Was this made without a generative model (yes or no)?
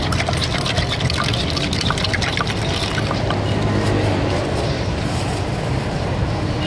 yes